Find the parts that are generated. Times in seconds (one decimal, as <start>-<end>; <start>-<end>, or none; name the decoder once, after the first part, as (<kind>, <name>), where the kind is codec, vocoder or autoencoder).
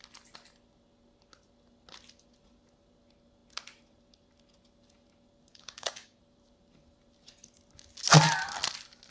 5.5-6.2 (codec, DAC)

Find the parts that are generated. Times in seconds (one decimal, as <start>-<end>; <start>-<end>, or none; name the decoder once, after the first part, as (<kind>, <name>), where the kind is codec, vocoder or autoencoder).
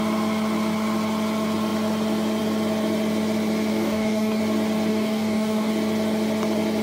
3.7-4.4 (codec, DAC); 4.9-5.7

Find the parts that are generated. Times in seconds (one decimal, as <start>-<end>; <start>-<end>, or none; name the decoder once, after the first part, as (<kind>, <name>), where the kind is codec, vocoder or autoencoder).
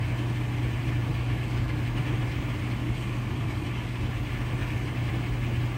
1.1-1.8 (codec, DAC); 2.8-4.0; 4.6-5.1